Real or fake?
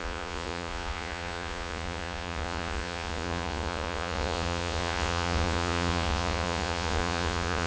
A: fake